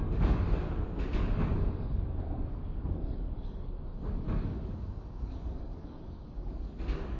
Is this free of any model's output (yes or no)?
no